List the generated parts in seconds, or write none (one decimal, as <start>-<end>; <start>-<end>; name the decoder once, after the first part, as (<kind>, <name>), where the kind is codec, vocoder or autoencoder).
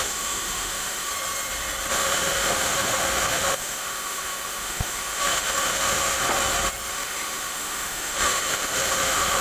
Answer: 0.0-1.1 (autoencoder, DAC-VAE); 1.9-6.2; 6.9-9.4